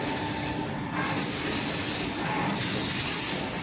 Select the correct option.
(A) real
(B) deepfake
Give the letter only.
A